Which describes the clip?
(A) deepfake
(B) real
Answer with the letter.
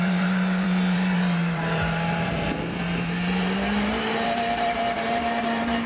A